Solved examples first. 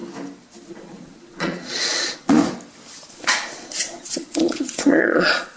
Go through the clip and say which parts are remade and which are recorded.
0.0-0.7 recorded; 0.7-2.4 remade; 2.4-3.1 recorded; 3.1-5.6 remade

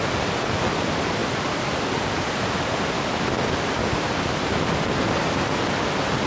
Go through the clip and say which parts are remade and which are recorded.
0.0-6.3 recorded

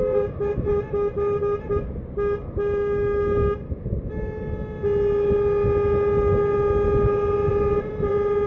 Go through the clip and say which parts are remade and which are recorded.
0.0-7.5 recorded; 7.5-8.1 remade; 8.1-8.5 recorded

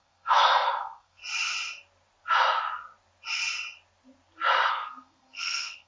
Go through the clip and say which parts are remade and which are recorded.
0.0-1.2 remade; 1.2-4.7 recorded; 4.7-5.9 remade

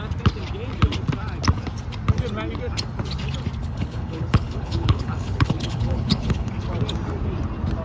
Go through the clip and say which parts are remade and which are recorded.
0.0-3.6 recorded; 3.6-6.5 remade; 6.5-7.8 recorded

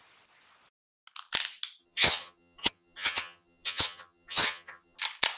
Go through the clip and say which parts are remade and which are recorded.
0.0-1.8 recorded; 1.8-5.0 remade; 5.0-5.4 recorded

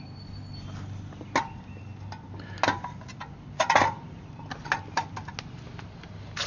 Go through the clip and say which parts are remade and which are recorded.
0.0-6.5 recorded

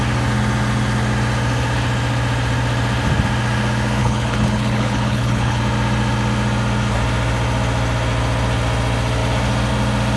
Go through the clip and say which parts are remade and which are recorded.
0.0-4.0 recorded; 4.0-5.6 remade; 5.6-10.2 recorded